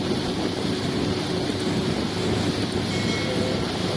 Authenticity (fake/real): real